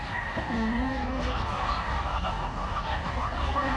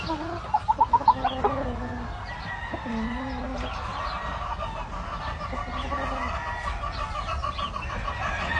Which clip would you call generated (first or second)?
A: first